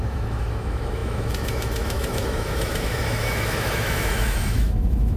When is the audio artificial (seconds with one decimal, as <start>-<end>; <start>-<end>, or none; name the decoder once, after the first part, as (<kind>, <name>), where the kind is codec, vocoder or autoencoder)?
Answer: 0.0-5.2 (autoencoder, DAC-VAE)